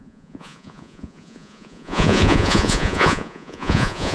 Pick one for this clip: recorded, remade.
remade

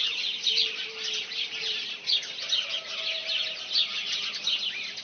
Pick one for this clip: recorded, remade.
recorded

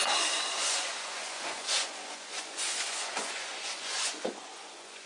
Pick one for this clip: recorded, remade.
remade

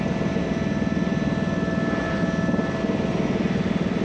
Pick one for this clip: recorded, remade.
recorded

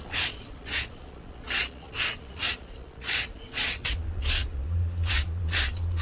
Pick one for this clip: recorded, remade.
remade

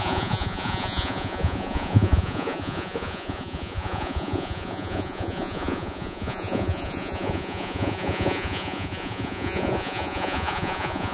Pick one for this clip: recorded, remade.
remade